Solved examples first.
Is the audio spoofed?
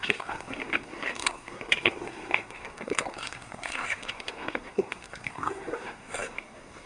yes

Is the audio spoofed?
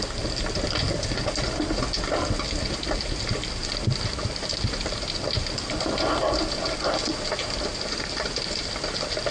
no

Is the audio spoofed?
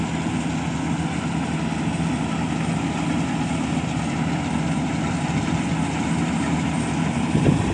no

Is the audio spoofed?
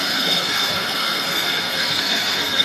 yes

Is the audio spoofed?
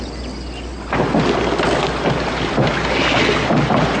no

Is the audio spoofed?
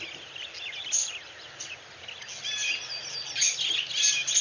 no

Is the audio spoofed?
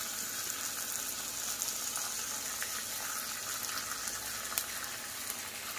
no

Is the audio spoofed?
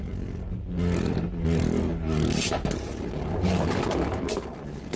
no